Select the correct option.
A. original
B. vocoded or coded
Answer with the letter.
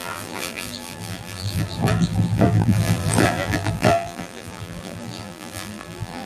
B